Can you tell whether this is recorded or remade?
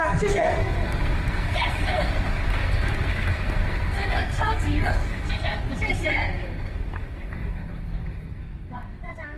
remade